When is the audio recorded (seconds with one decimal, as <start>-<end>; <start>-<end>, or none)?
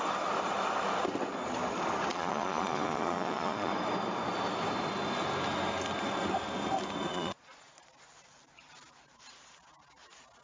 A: 0.0-2.1; 3.7-7.1; 7.9-10.4